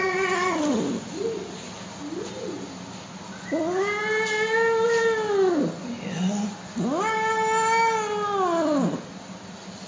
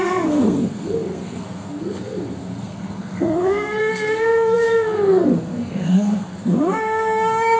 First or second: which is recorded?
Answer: first